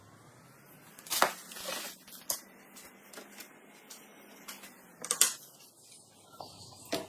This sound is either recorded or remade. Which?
recorded